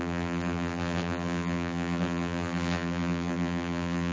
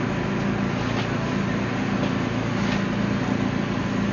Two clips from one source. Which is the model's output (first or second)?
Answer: first